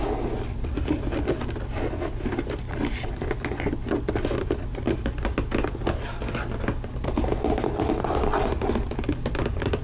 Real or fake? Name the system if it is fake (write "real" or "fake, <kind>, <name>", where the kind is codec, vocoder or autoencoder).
real